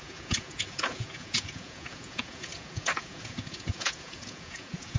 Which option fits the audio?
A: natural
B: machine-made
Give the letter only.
B